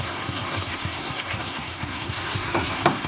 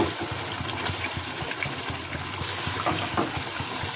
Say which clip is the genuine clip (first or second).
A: second